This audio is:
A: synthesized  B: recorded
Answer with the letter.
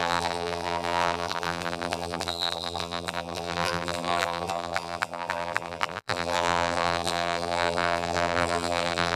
A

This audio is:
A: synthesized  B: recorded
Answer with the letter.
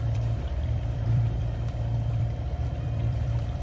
A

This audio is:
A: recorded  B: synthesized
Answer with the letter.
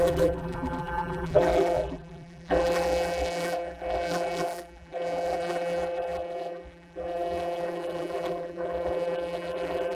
B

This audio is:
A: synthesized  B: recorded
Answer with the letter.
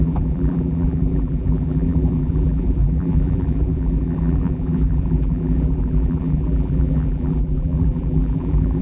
A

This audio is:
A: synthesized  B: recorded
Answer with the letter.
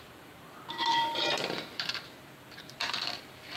A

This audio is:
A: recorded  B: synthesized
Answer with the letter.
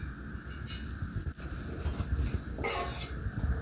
A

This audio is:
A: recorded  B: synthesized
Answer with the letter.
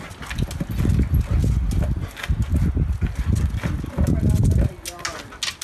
A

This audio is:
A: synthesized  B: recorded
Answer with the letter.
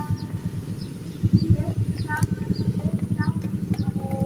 A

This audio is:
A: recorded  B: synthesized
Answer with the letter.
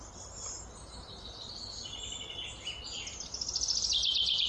A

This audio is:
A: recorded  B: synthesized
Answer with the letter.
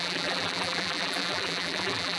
B